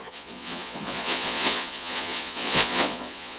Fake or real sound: fake